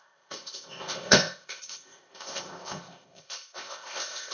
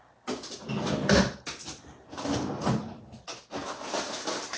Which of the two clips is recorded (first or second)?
second